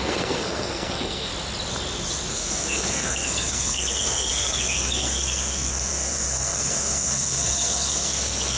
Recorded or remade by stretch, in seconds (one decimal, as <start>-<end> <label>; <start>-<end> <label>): 0.0-1.3 remade; 1.3-2.3 recorded; 2.3-8.6 remade